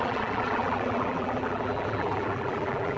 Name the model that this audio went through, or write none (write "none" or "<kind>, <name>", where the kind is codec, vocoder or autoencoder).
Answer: vocoder, BigVGAN v2